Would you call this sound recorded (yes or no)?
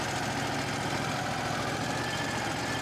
yes